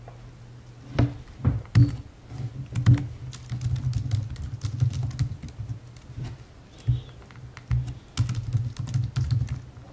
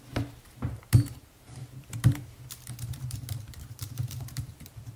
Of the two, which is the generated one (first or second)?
second